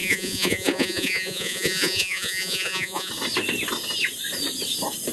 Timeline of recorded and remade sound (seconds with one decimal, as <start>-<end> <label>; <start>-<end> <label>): 0.0-3.1 remade; 3.1-5.1 recorded